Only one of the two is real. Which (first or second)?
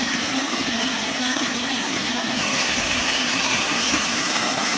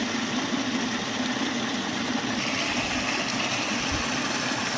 second